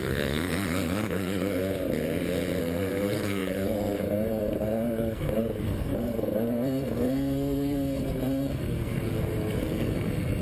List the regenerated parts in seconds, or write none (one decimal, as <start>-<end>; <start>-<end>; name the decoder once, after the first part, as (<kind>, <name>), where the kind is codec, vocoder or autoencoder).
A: 0.0-1.6 (codec, SNAC); 2.6-10.4